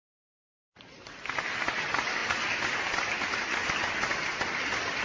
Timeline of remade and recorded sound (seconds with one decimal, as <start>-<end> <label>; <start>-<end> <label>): 0.0-5.0 recorded